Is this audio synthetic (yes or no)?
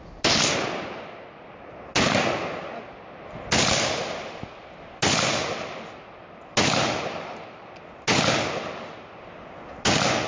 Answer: no